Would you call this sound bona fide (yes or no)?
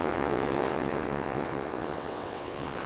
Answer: no